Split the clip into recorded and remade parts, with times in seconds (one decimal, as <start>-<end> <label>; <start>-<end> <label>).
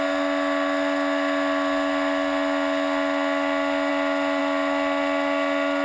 0.0-5.8 recorded